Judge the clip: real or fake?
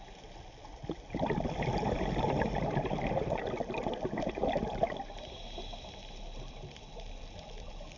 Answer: fake